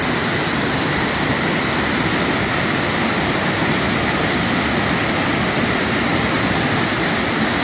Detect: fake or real real